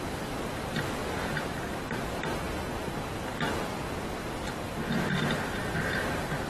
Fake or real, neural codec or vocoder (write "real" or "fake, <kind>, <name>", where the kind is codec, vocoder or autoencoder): real